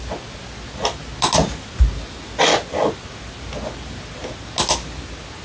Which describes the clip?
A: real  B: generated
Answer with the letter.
A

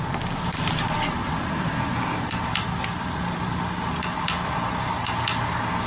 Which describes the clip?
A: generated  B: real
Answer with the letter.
B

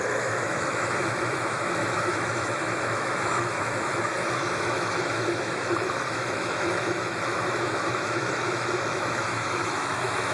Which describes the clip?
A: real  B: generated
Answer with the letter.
B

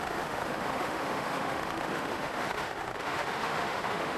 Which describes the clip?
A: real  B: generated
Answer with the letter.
B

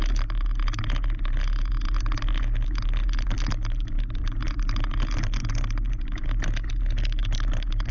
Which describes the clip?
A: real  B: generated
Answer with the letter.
A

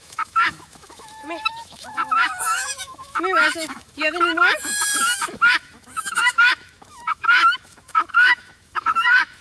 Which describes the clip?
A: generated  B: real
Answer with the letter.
A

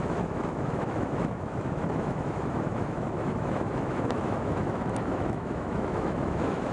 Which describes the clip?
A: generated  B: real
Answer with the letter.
A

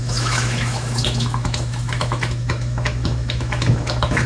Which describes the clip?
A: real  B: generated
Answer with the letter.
B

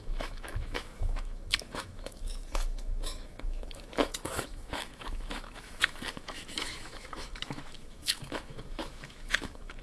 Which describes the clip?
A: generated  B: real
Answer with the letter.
A